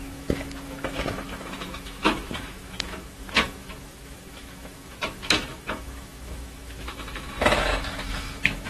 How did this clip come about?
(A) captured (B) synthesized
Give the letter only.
B